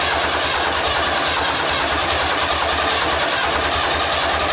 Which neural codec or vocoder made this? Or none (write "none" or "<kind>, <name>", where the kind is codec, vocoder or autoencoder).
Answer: vocoder, BigVGAN v2